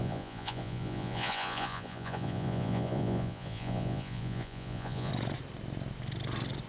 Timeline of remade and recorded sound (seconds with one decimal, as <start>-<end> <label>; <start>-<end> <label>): 0.0-5.1 remade; 5.1-6.7 recorded